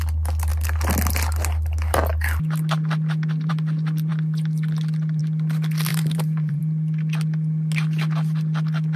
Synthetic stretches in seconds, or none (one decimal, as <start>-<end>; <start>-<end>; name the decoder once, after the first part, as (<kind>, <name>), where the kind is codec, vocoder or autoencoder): 5.9-6.6 (vocoder, BigVGAN v2)